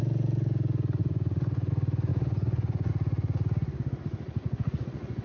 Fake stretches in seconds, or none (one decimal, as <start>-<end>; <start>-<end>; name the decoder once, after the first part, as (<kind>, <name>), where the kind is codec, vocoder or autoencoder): 1.0-1.7 (vocoder, Vocos); 2.1-2.9; 4.4-5.2